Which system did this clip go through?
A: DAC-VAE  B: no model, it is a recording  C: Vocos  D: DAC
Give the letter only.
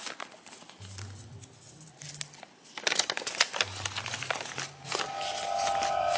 B